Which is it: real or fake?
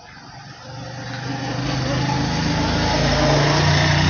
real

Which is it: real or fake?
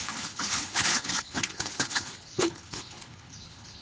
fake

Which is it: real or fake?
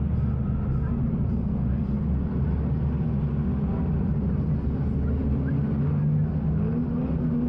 real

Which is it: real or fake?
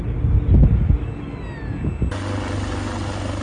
real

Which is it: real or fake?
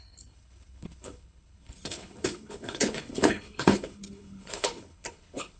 fake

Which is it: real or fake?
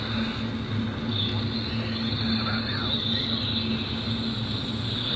real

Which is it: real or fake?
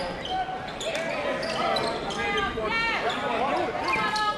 real